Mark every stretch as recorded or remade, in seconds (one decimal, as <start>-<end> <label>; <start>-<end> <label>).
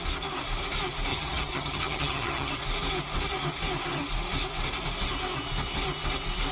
0.0-1.1 recorded; 1.1-2.5 remade; 2.5-6.5 recorded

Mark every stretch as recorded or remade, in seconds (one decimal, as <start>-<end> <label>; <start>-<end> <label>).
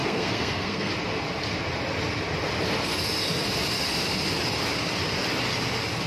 0.0-0.9 remade; 0.9-6.1 recorded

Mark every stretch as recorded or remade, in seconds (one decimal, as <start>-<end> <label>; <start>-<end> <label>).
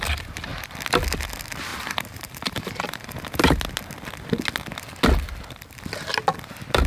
0.0-1.7 recorded; 1.7-3.2 remade; 3.2-6.9 recorded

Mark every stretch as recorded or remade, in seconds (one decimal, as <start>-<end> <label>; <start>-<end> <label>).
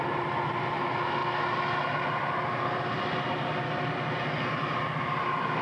0.0-5.6 recorded